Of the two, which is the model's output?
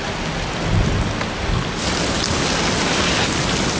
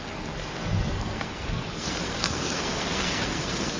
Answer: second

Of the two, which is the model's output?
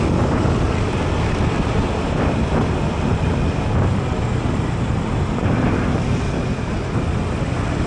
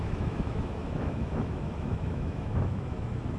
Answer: second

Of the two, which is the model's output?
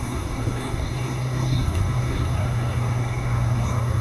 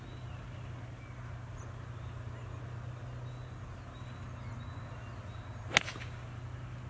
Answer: first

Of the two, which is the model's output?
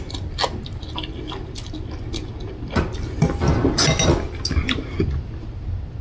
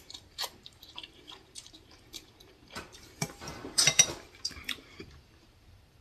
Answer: second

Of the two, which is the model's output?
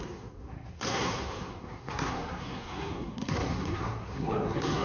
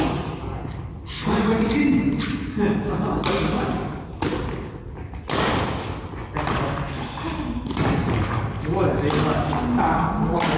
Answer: first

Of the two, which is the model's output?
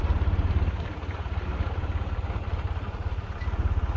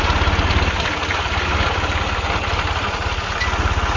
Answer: first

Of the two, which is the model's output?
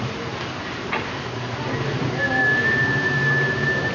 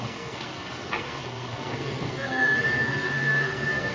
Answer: second